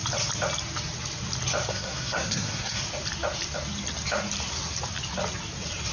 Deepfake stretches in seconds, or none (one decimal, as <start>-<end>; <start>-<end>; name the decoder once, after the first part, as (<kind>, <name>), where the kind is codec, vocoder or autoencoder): 1.7-2.8 (codec, SNAC)